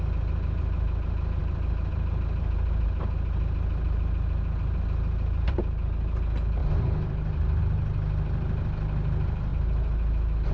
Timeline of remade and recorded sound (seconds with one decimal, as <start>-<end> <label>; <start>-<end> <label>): 0.0-10.5 recorded